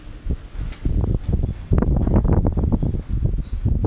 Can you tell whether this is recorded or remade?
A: recorded